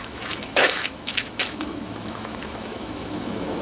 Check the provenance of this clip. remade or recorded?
remade